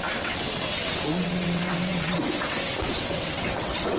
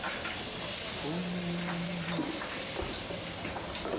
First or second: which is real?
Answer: second